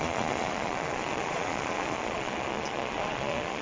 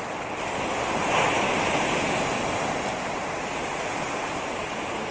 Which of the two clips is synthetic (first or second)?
first